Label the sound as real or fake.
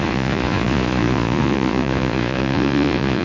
fake